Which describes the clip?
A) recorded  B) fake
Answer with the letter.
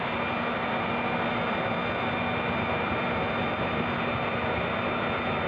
A